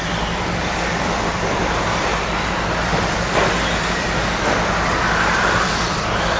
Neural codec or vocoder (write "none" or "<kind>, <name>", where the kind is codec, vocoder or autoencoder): vocoder, BigVGAN v2